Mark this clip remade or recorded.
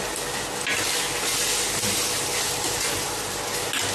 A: recorded